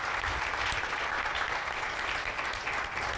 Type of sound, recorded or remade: recorded